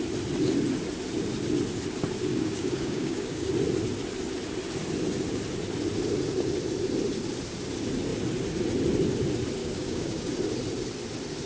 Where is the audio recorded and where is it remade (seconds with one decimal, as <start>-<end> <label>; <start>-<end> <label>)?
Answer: 0.0-2.3 recorded; 2.3-3.5 remade; 3.5-9.6 recorded; 9.6-10.3 remade; 10.3-11.5 recorded